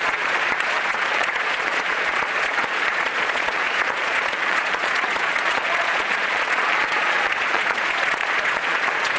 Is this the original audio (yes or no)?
no